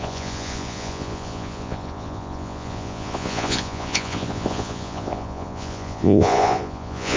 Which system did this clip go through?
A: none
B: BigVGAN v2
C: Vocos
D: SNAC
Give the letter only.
C